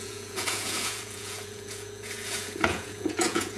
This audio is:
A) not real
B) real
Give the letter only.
A